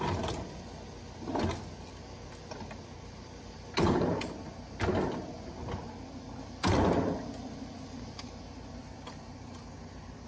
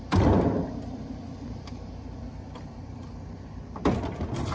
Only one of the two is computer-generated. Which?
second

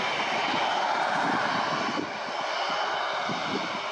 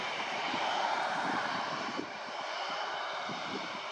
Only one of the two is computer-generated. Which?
second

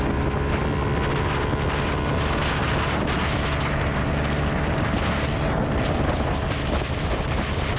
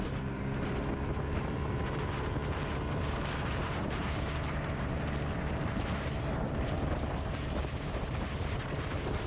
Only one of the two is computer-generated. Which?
second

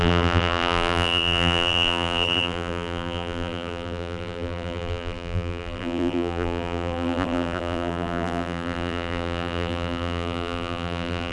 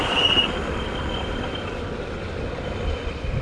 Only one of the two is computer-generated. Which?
first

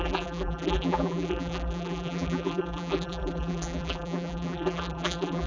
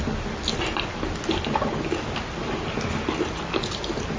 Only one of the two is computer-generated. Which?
first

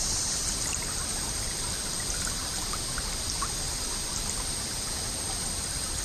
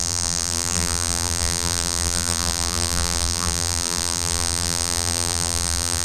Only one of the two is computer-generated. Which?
second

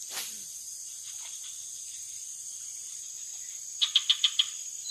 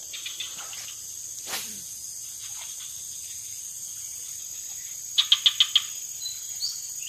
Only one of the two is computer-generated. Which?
first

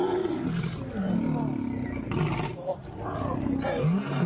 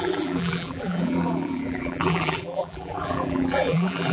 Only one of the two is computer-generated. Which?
second